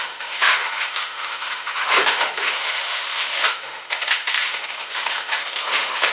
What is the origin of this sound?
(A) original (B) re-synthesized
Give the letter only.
B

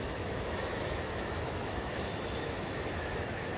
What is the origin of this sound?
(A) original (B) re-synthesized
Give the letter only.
B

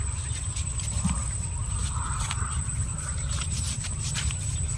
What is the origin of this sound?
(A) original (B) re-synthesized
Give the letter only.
A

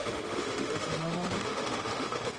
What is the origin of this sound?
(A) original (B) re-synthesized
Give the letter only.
B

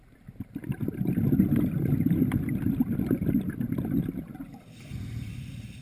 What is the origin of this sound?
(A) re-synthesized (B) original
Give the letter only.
B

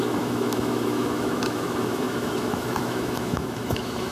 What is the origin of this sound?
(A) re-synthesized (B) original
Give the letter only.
A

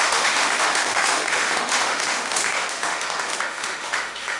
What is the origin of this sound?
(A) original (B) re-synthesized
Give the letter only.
B